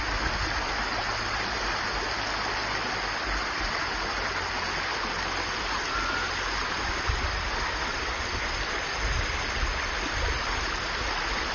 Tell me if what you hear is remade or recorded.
recorded